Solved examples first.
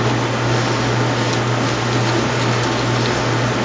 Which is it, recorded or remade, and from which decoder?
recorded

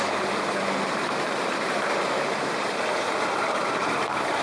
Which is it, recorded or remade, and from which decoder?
remade, vocoder, BigVGAN v2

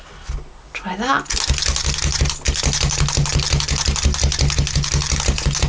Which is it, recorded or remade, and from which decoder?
recorded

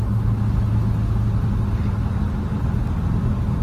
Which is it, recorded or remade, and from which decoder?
recorded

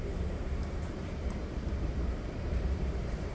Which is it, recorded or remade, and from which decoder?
remade, vocoder, BigVGAN v2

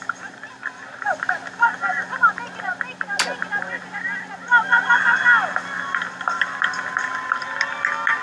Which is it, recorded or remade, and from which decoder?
recorded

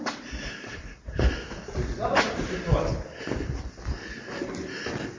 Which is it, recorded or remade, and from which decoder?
remade, vocoder, BigVGAN v2